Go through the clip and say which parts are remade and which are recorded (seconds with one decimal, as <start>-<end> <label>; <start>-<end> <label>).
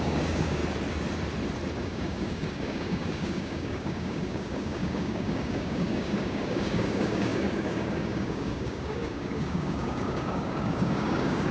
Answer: 0.0-0.6 remade; 0.6-1.8 recorded; 1.8-11.5 remade